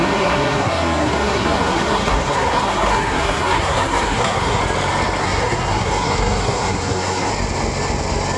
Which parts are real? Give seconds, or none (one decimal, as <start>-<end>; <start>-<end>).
4.6-5.2; 7.3-8.4